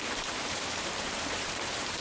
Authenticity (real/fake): fake